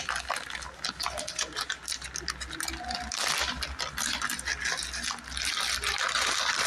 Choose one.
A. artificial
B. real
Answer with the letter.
B